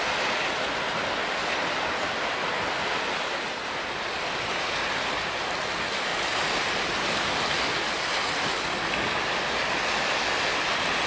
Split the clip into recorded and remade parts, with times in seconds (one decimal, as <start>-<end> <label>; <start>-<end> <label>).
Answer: 0.0-11.1 recorded